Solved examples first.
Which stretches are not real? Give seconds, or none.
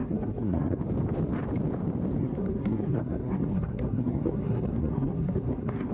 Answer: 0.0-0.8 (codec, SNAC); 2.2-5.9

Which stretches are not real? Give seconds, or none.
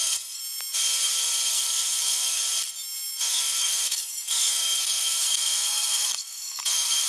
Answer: 0.0-0.4 (codec, SNAC); 1.5-2.4; 3.3-7.1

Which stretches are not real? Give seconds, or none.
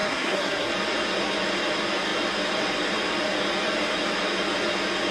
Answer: 0.0-0.7 (codec, SNAC)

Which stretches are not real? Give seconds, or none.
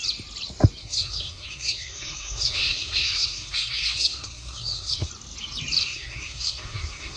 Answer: 0.8-5.1 (codec, SNAC); 5.8-7.2